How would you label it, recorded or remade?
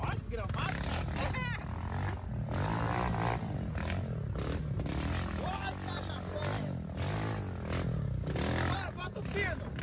recorded